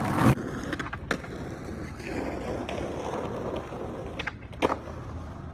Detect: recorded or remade recorded